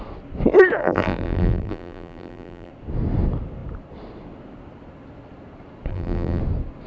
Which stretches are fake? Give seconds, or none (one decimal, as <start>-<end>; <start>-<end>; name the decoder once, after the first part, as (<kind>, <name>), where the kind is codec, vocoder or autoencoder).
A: 0.8-2.7 (vocoder, BigVGAN v2); 5.9-6.4